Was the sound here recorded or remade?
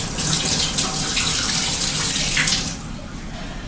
recorded